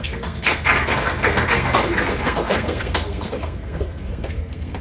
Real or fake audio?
fake